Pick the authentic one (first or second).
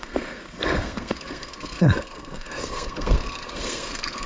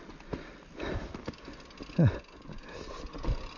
second